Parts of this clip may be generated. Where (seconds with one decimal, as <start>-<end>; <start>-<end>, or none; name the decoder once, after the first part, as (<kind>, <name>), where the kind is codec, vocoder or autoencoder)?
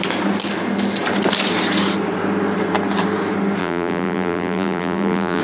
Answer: 3.6-5.4 (vocoder, BigVGAN v2)